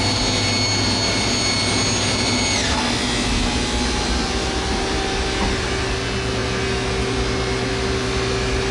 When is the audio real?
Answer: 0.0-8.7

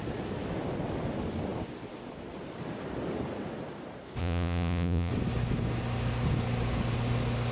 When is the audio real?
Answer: 0.0-4.2; 5.1-7.5